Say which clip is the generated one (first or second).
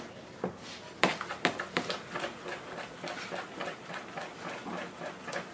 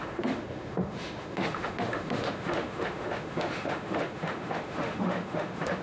second